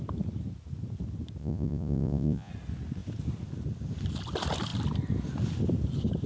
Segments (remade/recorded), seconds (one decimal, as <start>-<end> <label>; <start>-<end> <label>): 0.0-1.4 recorded; 1.4-2.5 remade; 2.5-6.3 recorded